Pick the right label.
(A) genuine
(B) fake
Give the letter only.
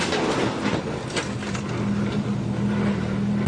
A